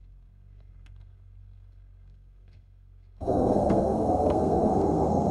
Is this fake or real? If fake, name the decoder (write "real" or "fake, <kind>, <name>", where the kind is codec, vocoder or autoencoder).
fake, codec, SNAC